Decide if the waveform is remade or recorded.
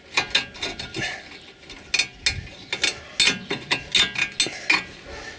recorded